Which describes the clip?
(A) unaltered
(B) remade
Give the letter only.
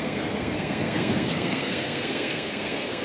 B